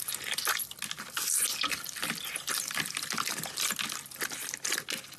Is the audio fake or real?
real